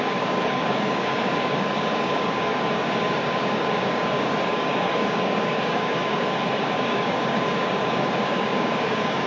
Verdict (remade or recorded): remade